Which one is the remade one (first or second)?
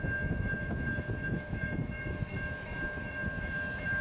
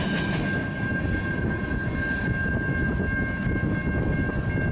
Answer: first